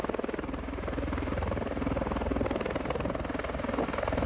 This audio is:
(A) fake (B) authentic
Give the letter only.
B